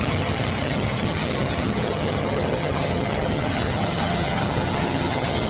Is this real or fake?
fake